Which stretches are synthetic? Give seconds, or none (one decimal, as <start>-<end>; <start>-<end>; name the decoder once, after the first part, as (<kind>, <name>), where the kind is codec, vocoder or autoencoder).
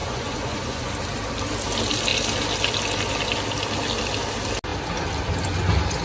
0.0-0.9 (vocoder, Vocos)